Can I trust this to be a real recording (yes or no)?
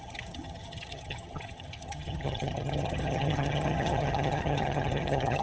no